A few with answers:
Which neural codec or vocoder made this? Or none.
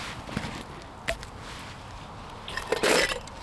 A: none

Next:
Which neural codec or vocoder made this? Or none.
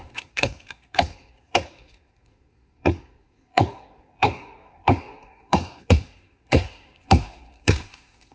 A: codec, SNAC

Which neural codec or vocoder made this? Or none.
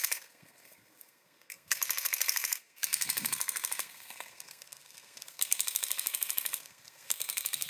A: codec, SNAC